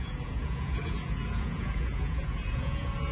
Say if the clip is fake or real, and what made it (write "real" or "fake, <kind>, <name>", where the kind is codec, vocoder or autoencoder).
fake, vocoder, Vocos